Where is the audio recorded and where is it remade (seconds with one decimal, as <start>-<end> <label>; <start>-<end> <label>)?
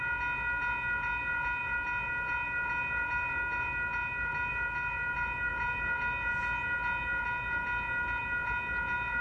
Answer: 0.0-9.2 recorded